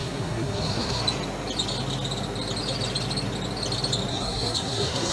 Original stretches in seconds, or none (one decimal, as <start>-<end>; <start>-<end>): 1.0-4.1